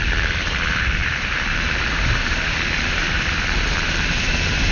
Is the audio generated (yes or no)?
yes